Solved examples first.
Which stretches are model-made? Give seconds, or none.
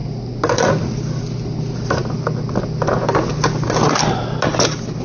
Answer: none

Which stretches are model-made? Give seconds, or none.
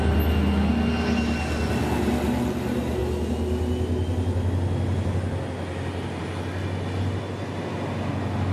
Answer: none